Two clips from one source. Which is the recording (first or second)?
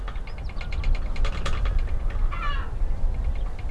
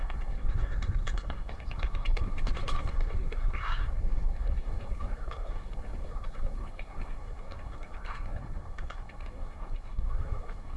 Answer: first